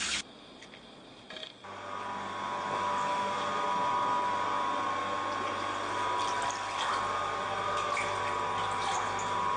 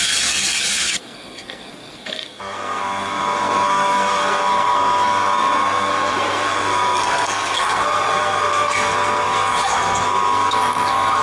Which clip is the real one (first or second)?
first